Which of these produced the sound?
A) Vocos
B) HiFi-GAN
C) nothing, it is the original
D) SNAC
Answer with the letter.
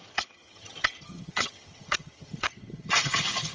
B